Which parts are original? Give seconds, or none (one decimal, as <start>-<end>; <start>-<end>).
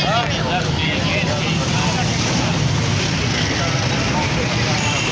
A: 0.0-5.1